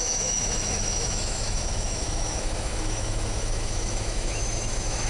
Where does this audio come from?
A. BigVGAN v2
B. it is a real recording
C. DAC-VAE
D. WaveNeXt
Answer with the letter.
C